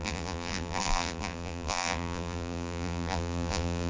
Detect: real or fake fake